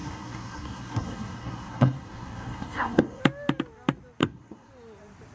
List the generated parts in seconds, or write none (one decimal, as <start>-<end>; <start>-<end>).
0.0-3.2; 4.2-4.7